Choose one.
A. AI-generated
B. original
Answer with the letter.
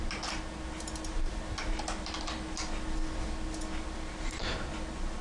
B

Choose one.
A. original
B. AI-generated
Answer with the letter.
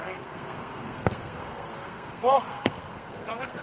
B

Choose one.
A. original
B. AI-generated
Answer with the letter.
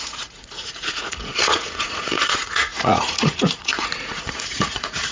B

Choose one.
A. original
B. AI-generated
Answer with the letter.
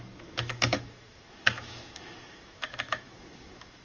B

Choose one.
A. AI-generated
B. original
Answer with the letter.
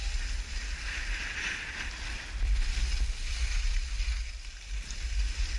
B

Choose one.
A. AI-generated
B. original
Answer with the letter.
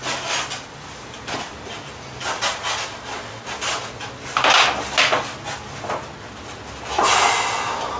B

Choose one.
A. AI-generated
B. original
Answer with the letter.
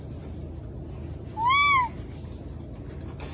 B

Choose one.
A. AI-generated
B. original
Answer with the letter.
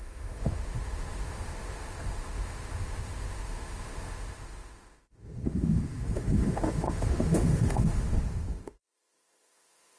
A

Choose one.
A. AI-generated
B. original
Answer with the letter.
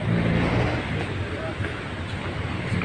B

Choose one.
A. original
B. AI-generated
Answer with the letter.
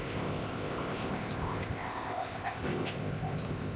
B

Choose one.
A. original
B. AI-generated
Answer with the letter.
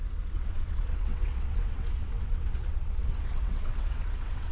B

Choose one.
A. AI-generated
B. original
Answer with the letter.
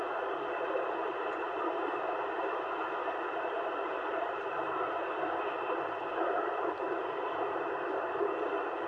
A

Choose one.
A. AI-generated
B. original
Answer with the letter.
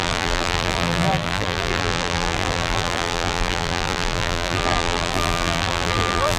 A